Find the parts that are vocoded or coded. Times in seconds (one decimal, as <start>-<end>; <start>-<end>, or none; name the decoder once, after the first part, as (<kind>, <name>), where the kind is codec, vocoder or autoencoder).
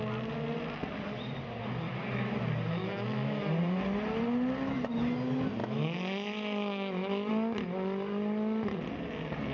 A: 2.8-3.4 (autoencoder, DAC-VAE); 5.6-7.3